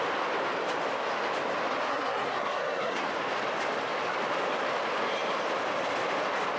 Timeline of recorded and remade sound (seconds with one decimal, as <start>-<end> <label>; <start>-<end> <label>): 0.0-1.9 recorded; 1.9-3.1 remade; 3.1-6.6 recorded